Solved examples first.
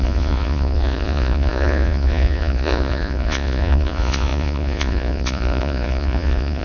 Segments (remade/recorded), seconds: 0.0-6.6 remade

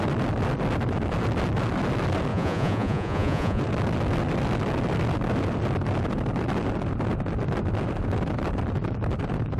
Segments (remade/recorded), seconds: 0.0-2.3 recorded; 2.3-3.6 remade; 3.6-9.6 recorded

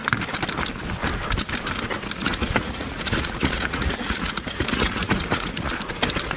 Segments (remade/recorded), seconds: 0.0-2.2 recorded; 2.2-5.7 remade; 5.7-6.4 recorded

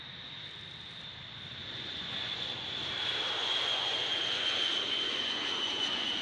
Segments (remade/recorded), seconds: 0.0-1.6 recorded; 1.6-2.8 remade; 2.8-3.4 recorded; 3.4-6.2 remade